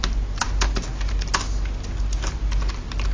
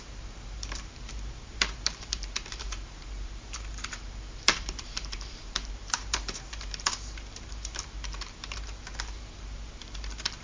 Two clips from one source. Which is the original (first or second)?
first